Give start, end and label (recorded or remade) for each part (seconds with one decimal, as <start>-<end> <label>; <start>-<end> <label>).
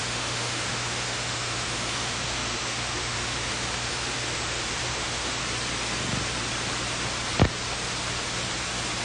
0.0-5.4 remade; 5.4-9.0 recorded